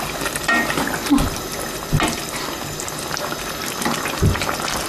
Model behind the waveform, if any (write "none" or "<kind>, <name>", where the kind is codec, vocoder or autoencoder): none